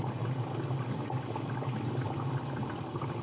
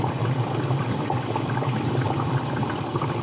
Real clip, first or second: first